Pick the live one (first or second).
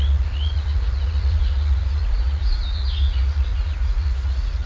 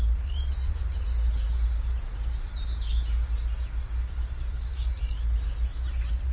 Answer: second